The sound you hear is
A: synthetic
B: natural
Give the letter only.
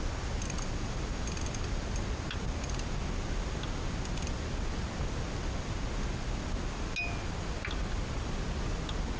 B